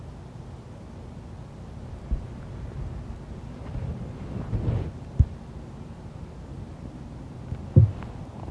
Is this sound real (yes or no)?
yes